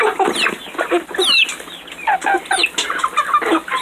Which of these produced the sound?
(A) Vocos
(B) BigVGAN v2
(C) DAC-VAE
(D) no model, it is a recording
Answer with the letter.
D